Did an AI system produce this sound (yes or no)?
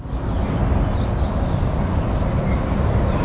no